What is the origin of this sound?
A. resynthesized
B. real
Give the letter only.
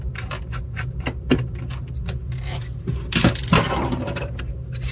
B